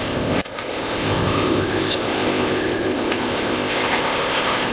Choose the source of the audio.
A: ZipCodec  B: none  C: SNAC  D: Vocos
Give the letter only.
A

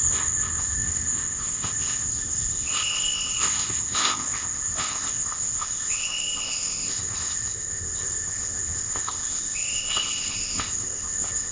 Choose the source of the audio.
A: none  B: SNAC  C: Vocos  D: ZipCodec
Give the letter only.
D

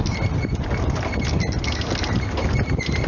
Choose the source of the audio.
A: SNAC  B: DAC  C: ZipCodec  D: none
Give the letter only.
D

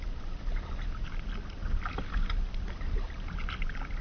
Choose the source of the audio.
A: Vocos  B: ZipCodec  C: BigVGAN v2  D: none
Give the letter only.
D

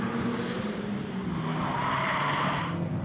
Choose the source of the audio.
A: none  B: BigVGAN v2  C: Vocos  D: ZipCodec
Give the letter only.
A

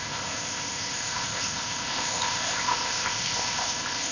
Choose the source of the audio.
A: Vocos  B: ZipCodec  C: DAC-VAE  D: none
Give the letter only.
B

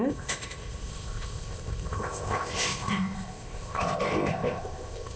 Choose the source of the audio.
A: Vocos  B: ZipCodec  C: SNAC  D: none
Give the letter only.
B